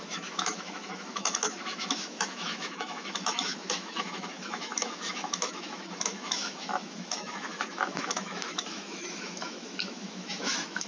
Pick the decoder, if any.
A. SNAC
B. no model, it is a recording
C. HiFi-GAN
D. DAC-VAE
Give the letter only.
D